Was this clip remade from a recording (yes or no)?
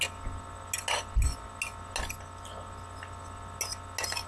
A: no